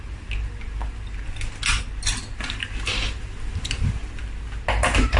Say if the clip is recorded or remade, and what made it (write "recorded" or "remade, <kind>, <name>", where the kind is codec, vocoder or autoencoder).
recorded